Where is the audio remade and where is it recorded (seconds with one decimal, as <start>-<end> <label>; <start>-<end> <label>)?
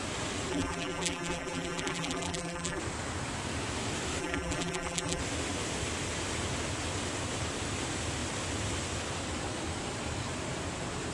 0.0-0.5 recorded; 0.5-2.8 remade; 2.8-4.2 recorded; 4.2-5.2 remade; 5.2-11.1 recorded